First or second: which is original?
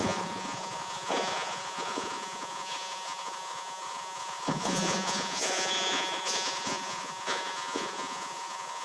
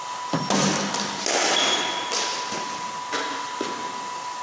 second